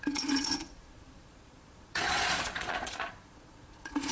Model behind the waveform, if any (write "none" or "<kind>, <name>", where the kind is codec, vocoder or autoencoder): vocoder, Vocos